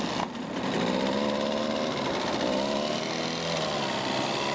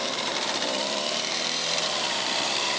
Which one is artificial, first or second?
second